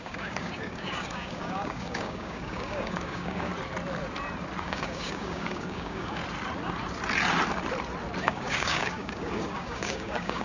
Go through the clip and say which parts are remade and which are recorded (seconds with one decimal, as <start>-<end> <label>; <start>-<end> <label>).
0.0-3.5 remade; 3.5-4.6 recorded; 4.6-6.2 remade; 6.2-8.2 recorded; 8.2-10.4 remade